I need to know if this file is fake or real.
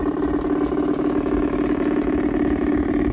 real